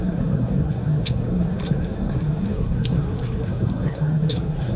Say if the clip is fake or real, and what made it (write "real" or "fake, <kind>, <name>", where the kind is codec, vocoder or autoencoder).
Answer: fake, codec, SNAC